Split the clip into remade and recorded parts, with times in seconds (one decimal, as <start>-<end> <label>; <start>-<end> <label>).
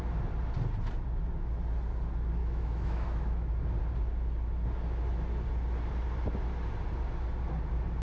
0.0-2.4 recorded; 2.4-3.5 remade; 3.5-8.0 recorded